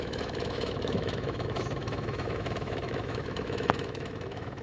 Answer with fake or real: fake